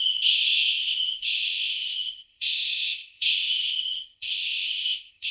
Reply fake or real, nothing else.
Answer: fake